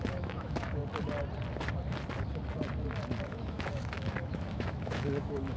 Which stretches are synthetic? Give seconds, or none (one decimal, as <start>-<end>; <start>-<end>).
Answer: 0.0-0.8; 3.2-5.6